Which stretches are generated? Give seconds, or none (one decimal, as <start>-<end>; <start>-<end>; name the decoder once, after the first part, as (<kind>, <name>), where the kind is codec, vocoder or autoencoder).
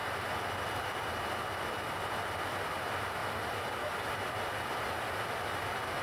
none